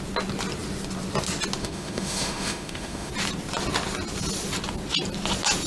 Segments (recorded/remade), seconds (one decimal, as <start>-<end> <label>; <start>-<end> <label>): 0.0-1.6 recorded; 1.6-3.1 remade; 3.1-5.7 recorded